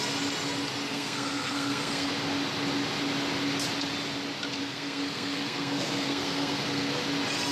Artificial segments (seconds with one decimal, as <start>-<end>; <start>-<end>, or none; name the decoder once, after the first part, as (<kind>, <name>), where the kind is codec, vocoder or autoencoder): 0.9-2.1 (codec, SNAC); 4.6-7.0